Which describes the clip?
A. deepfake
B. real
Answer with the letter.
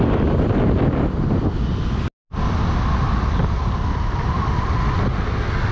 B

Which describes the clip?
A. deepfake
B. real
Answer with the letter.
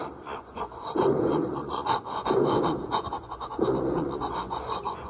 A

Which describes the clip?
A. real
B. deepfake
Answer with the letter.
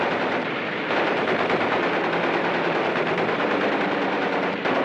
B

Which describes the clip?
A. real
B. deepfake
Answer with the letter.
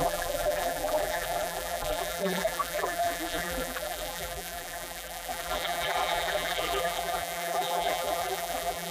B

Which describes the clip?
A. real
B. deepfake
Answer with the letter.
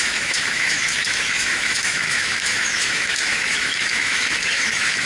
B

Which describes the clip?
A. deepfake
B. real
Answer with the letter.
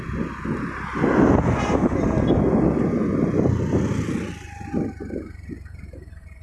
B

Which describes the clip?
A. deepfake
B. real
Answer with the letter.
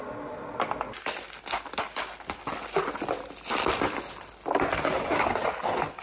B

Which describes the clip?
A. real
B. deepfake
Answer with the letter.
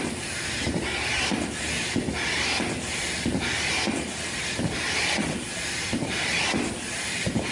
B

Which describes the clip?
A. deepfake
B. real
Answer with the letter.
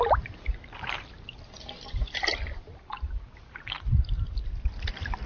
B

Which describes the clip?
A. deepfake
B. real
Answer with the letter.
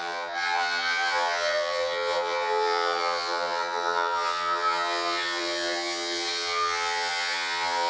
A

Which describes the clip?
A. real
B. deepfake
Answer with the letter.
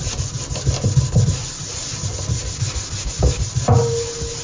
A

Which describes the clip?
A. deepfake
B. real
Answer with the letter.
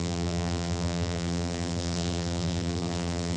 A